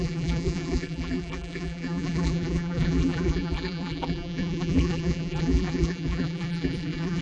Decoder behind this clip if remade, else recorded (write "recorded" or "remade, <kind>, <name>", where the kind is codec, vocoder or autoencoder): remade, vocoder, BigVGAN v2